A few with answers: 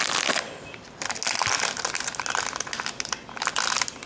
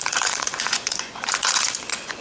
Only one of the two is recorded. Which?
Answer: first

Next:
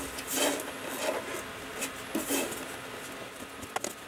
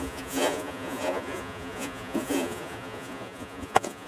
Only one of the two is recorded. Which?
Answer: first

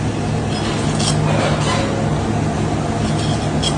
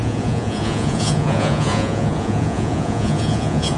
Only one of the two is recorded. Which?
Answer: first